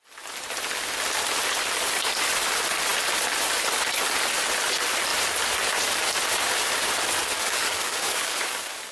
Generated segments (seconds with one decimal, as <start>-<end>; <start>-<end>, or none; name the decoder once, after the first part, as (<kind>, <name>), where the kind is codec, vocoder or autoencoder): 7.2-8.9 (codec, DAC)